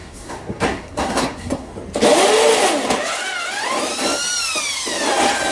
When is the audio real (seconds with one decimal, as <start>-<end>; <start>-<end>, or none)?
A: 1.7-5.5